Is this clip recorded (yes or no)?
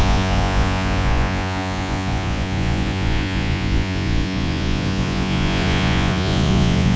no